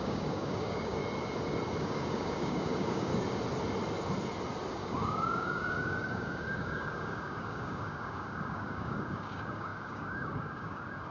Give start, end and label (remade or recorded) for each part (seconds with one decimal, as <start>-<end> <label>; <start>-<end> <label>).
0.0-1.0 remade; 1.0-1.8 recorded; 1.8-3.1 remade; 3.1-4.7 recorded; 4.7-11.1 remade